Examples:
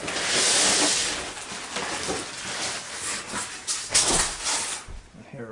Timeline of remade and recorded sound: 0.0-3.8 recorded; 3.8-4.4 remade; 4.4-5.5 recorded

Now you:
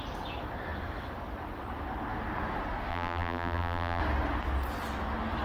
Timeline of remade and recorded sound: 0.0-2.9 recorded; 2.9-4.0 remade; 4.0-5.4 recorded

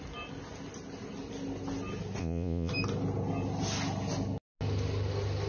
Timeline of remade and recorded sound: 0.0-2.2 recorded; 2.2-2.7 remade; 2.7-5.5 recorded

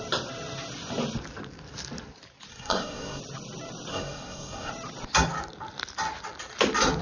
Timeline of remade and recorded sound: 0.0-2.5 recorded; 2.5-3.2 remade; 3.2-3.9 recorded; 3.9-4.7 remade; 4.7-7.0 recorded

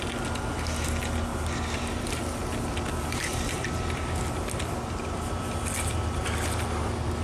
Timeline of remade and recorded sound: 0.0-2.4 recorded; 2.4-5.5 remade; 5.5-7.2 recorded

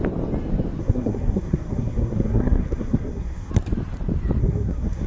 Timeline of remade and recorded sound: 0.0-0.8 recorded; 0.8-3.5 remade; 3.5-4.4 recorded; 4.4-5.1 remade